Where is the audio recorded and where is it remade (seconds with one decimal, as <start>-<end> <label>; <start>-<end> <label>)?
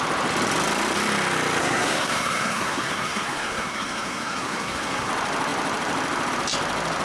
0.0-1.6 recorded; 1.6-5.1 remade; 5.1-7.0 recorded